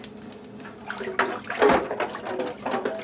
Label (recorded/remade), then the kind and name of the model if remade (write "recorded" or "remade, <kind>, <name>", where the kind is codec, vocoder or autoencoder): recorded